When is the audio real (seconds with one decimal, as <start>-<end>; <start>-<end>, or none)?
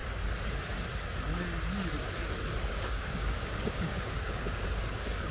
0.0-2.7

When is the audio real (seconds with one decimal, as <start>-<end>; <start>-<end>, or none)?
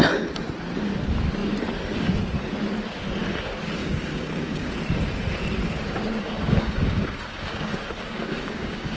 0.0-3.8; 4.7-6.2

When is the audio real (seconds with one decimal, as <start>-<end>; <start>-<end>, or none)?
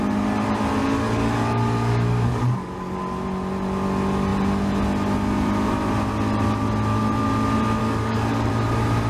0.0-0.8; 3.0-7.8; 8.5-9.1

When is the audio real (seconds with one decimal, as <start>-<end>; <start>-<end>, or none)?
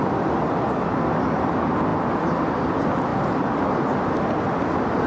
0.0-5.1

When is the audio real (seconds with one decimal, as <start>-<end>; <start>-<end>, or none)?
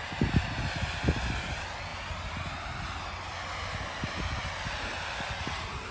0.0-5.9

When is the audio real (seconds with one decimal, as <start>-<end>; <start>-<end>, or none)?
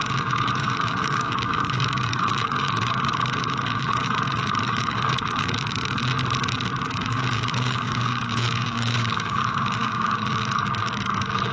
6.0-6.9